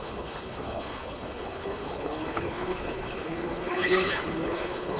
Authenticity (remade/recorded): remade